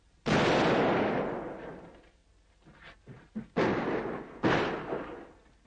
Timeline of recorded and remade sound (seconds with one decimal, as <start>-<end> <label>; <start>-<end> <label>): 0.0-2.2 remade; 2.2-5.7 recorded